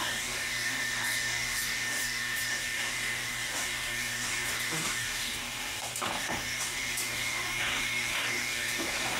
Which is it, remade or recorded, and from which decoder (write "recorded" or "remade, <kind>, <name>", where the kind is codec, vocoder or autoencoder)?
remade, codec, DAC